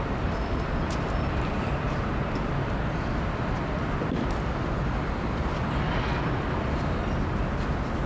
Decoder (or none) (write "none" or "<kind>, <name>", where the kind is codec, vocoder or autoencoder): none